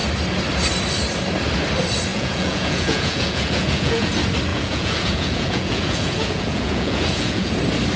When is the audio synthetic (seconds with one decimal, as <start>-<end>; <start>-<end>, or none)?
2.1-4.1; 4.5-7.5